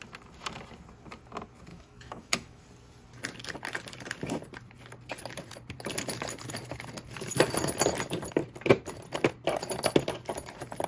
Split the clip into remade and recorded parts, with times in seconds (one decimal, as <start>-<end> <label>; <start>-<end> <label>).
0.0-1.7 recorded; 1.7-2.6 remade; 2.6-10.9 recorded